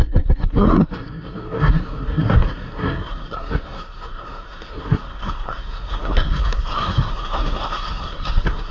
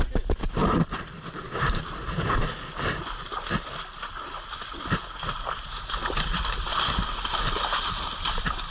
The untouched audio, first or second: second